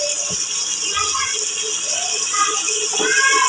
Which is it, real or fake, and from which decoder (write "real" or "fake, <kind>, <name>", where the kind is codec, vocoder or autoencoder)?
real